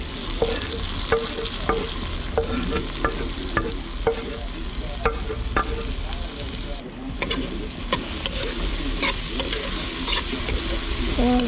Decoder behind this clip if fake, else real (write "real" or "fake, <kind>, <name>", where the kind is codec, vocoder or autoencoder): real